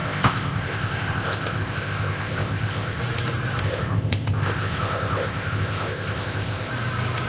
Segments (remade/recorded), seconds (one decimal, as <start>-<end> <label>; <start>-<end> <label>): 0.0-3.0 remade; 3.0-3.6 recorded; 3.6-6.7 remade; 6.7-7.3 recorded

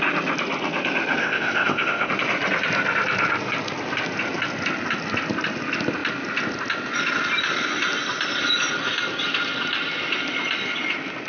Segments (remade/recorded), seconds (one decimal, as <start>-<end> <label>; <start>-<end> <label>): 0.0-1.2 recorded; 1.2-2.1 remade; 2.1-11.3 recorded

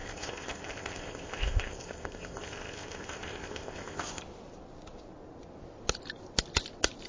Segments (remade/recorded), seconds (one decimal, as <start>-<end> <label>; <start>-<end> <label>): 0.0-4.2 remade; 4.2-7.1 recorded

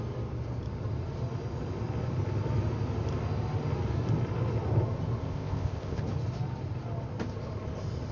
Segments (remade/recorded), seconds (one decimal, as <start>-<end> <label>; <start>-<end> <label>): 0.0-5.2 recorded; 5.2-6.0 remade; 6.0-8.1 recorded

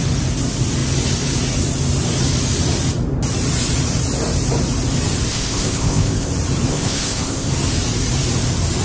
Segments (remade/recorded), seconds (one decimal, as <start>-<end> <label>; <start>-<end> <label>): 0.0-5.3 recorded; 5.3-6.3 remade; 6.3-6.7 recorded; 6.7-7.5 remade; 7.5-8.8 recorded

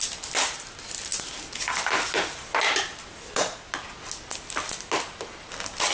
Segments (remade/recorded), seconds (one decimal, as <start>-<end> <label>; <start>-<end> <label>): 0.0-5.9 recorded